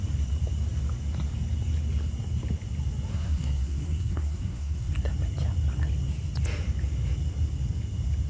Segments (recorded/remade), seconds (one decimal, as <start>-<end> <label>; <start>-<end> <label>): 0.0-3.1 recorded; 3.1-4.9 remade; 4.9-8.3 recorded